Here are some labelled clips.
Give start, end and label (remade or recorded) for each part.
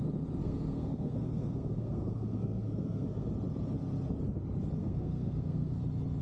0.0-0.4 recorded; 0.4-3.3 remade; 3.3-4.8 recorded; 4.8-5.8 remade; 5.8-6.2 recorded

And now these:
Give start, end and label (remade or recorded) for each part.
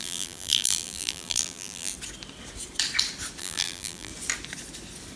0.0-1.9 remade; 1.9-3.4 recorded; 3.4-4.1 remade; 4.1-5.2 recorded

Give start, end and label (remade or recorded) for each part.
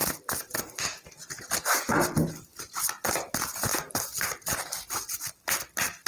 0.0-2.3 recorded; 2.3-3.7 remade; 3.7-4.2 recorded; 4.2-6.1 remade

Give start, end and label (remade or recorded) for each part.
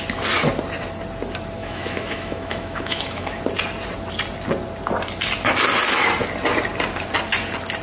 0.0-1.6 recorded; 1.6-3.4 remade; 3.4-7.8 recorded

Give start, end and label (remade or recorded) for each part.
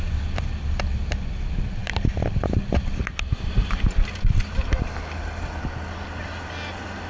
0.0-7.1 recorded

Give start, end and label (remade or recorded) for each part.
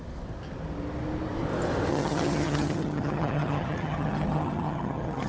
0.0-1.9 recorded; 1.9-5.3 remade